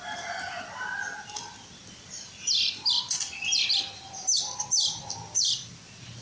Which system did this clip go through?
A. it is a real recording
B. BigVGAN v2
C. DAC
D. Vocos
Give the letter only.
B